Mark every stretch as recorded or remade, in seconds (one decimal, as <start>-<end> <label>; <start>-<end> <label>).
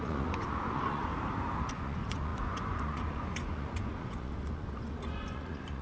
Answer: 0.0-1.1 remade; 1.1-1.7 recorded; 1.7-5.8 remade